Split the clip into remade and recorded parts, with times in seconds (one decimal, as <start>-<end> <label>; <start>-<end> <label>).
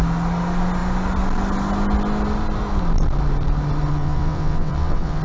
0.0-3.9 recorded; 3.9-5.2 remade